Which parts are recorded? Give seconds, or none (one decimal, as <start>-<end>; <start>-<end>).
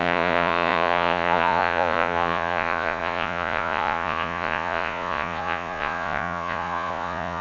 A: none